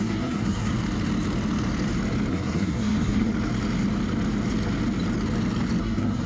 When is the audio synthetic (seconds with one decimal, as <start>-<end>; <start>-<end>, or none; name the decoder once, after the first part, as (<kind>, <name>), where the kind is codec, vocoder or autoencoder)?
0.0-0.7 (codec, SNAC); 2.3-3.3; 5.8-6.3